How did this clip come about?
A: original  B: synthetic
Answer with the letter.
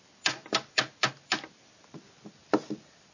A